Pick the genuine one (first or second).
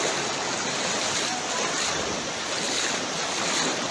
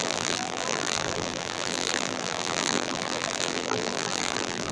first